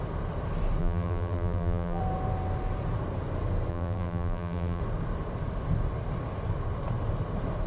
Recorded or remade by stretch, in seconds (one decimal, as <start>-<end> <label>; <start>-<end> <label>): 0.0-0.8 recorded; 0.8-2.0 remade; 2.0-3.7 recorded; 3.7-4.8 remade; 4.8-7.7 recorded